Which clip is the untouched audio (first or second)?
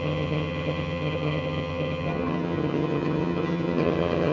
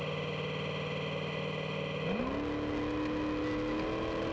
second